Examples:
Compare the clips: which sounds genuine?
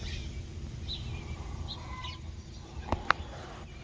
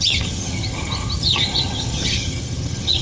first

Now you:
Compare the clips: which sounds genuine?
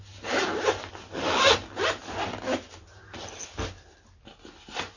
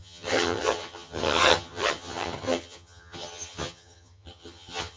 first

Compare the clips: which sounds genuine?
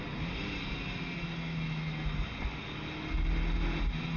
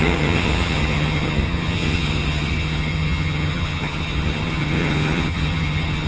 first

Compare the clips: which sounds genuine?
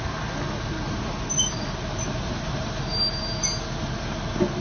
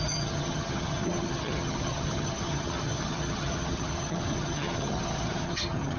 first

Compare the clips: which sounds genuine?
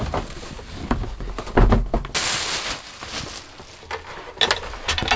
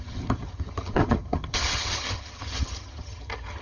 first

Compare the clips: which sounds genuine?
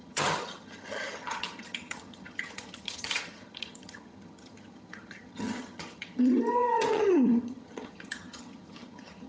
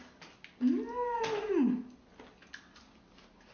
second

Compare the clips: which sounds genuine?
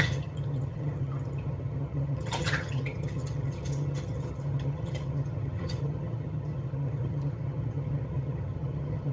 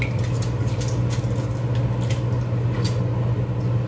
second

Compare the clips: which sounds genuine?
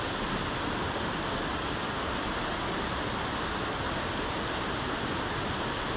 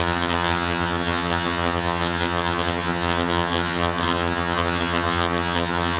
first